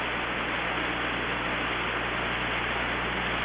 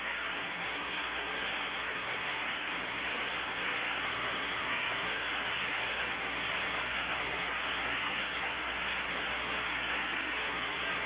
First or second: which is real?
first